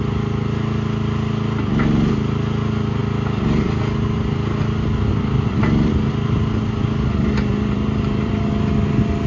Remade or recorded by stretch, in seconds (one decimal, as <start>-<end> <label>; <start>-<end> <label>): 0.0-7.5 recorded; 7.5-8.3 remade; 8.3-9.3 recorded